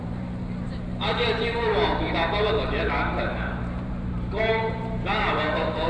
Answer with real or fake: fake